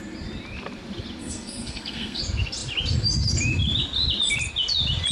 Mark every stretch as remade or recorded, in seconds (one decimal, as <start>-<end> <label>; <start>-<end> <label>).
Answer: 0.0-1.2 recorded; 1.2-2.2 remade; 2.2-5.1 recorded